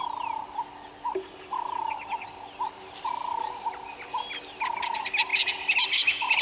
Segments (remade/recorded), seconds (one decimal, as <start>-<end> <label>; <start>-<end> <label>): 0.0-5.3 recorded; 5.3-6.4 remade